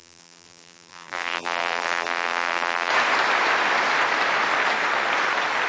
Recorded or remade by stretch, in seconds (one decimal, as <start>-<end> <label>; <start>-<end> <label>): 0.0-2.9 remade; 2.9-5.7 recorded